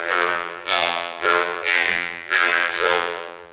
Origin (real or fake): fake